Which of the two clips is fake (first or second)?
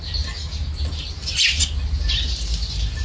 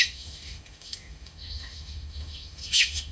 second